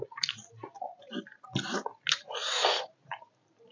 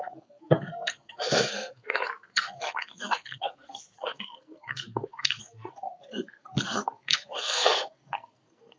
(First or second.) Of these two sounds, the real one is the first